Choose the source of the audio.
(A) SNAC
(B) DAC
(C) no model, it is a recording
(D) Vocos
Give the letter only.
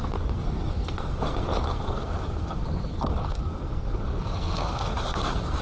A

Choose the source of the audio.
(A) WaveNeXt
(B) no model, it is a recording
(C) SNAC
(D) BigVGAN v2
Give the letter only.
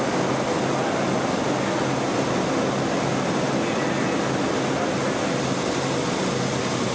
B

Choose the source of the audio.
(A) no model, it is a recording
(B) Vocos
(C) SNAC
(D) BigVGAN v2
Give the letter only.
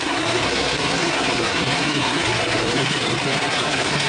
C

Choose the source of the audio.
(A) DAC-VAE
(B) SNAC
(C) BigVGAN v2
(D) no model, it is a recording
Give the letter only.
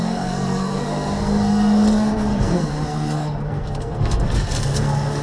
B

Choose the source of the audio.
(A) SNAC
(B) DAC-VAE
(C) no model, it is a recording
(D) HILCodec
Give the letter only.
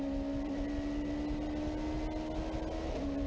C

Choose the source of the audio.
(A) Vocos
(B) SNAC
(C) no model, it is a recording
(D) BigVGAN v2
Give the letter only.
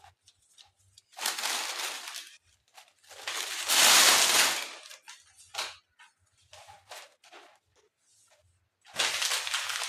C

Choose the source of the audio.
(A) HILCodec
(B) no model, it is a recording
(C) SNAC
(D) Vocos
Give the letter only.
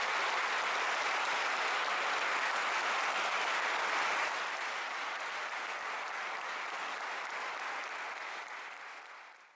B